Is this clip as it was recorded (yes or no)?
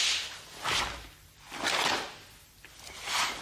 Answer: yes